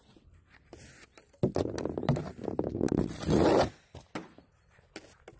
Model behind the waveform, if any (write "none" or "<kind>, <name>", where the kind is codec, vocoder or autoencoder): none